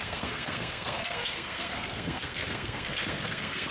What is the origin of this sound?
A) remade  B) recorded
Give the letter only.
A